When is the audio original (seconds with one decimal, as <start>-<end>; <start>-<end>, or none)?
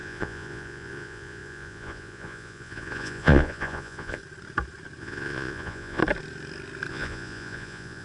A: 4.2-5.0; 6.0-6.9